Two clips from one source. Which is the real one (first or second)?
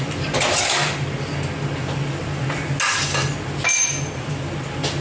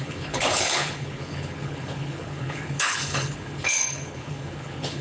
first